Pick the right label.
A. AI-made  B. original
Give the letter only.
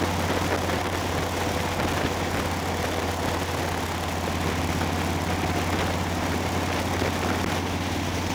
B